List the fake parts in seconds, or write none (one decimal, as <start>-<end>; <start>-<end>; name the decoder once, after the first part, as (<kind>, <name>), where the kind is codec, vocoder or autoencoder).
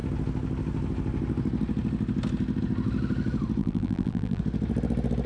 3.6-4.4 (vocoder, BigVGAN v2)